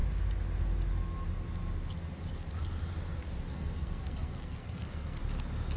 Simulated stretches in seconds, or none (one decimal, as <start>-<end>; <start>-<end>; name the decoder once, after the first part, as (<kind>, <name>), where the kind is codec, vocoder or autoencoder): 3.5-5.2 (codec, SNAC)